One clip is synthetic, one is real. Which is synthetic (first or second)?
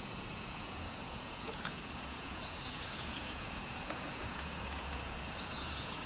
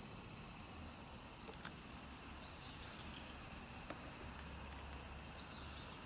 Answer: first